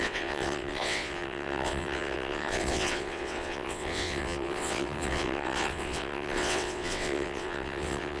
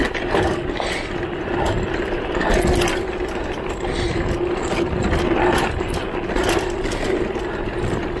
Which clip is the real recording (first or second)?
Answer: second